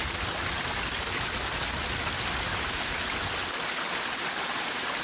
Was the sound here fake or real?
real